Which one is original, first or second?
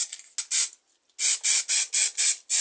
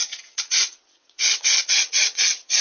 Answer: first